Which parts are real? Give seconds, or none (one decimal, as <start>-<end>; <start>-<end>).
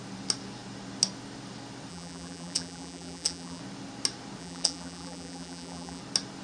0.0-1.9; 3.6-4.4; 6.0-6.4